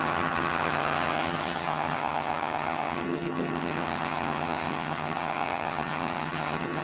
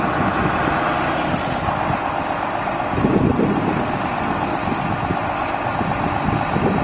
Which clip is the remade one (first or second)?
first